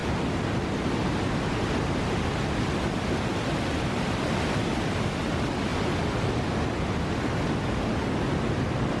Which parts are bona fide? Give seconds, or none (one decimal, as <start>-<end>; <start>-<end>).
0.0-9.0